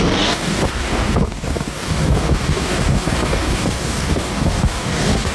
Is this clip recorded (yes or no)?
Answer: no